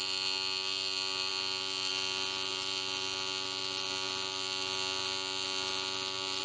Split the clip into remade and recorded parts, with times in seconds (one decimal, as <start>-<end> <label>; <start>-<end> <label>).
0.0-6.4 recorded